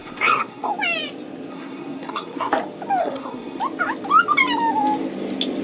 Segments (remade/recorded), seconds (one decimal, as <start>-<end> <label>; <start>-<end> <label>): 0.0-0.7 remade; 0.7-1.5 recorded; 1.5-2.5 remade; 2.5-3.0 recorded; 3.0-3.6 remade; 3.6-5.6 recorded